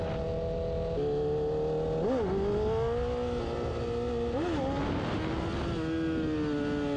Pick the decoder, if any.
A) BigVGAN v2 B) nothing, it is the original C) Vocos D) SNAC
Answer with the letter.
B